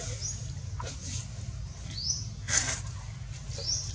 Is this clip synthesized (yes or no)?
no